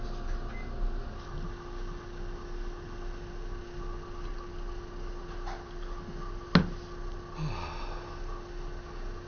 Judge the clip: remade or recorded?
recorded